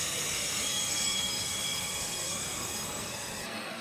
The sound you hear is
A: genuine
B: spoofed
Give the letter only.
B